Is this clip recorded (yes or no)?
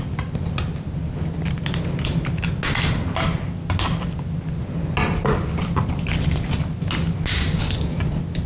yes